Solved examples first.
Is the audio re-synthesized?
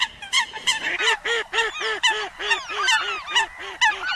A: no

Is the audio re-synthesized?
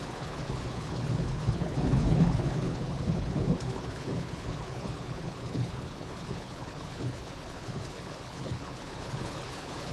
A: yes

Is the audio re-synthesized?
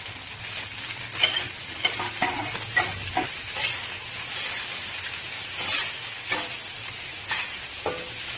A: no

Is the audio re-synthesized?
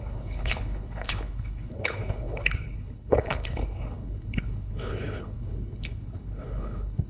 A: yes